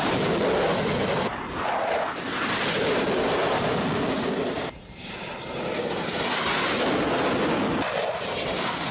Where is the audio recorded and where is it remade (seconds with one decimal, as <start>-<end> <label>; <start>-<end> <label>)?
0.0-8.9 recorded